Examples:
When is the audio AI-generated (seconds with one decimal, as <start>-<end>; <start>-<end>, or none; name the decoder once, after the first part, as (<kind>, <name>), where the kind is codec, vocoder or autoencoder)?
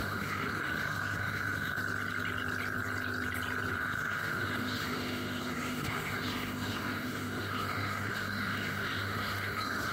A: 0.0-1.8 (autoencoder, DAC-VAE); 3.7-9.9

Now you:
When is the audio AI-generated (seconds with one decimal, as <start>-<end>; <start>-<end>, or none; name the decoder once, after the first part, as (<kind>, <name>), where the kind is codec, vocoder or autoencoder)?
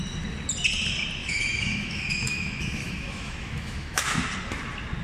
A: 1.2-4.2 (autoencoder, DAC-VAE)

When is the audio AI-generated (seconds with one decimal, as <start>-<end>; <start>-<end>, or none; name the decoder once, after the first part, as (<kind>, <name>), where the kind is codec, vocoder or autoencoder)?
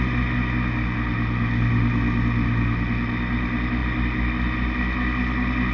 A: none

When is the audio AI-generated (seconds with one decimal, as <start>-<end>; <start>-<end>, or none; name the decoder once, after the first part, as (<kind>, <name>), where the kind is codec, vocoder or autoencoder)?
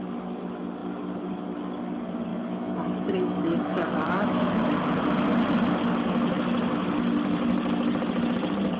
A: 2.3-4.6 (autoencoder, DAC-VAE)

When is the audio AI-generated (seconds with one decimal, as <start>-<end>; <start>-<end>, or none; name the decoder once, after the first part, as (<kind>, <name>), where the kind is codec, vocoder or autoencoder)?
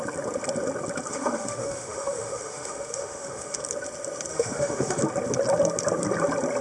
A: 1.1-3.6 (autoencoder, DAC-VAE); 4.3-5.0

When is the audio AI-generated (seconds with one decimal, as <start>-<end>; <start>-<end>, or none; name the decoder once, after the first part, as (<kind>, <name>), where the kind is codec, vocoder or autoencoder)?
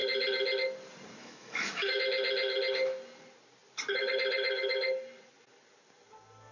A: 1.2-2.0 (autoencoder, DAC-VAE)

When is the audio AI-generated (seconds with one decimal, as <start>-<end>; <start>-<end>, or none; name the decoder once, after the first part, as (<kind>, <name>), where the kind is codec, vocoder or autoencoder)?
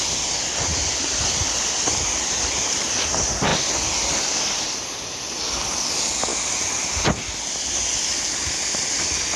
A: none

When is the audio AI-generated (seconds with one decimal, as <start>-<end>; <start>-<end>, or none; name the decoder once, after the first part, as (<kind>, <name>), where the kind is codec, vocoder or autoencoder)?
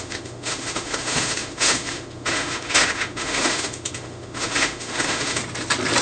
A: 0.0-5.4 (autoencoder, DAC-VAE)